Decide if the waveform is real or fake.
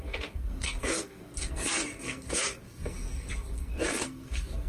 fake